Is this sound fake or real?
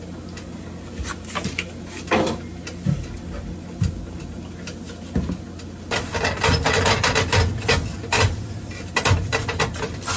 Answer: real